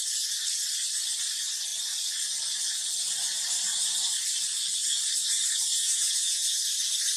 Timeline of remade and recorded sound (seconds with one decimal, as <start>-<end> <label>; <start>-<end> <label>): 0.0-5.7 recorded; 5.7-6.6 remade; 6.6-7.2 recorded